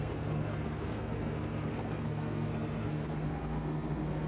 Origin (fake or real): fake